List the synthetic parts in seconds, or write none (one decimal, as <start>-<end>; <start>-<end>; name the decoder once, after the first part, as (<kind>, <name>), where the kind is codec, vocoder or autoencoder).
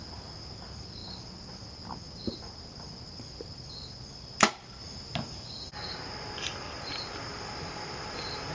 none